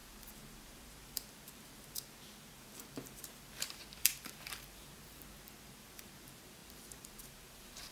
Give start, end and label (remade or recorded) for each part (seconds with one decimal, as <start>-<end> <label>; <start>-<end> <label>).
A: 0.0-7.9 remade